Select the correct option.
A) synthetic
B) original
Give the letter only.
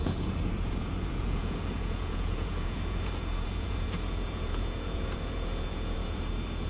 A